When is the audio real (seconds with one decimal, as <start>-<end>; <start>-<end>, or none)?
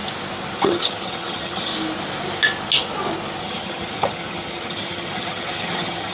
0.0-0.6; 1.7-3.4